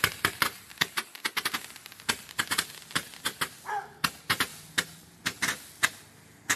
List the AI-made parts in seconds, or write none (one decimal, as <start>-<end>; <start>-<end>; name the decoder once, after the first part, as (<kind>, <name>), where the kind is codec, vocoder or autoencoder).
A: none